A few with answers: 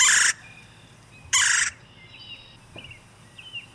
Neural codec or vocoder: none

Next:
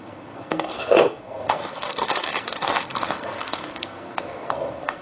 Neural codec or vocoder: codec, SNAC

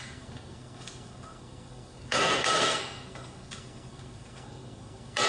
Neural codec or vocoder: codec, SNAC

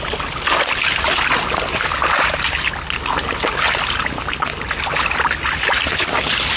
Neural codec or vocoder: none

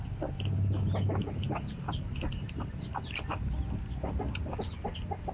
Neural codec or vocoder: none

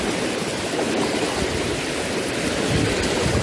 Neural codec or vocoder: none